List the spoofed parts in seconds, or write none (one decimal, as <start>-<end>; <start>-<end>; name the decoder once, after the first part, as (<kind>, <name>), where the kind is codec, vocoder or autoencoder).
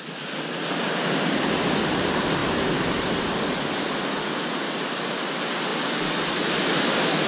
none